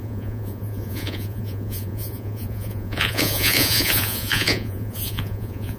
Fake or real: fake